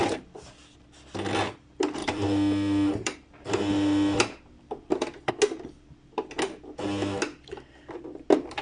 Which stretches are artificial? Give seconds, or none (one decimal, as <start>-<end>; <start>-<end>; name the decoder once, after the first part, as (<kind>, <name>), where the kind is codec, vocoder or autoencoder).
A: 2.0-5.3 (vocoder, BigVGAN v2)